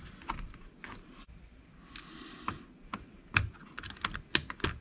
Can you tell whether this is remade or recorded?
recorded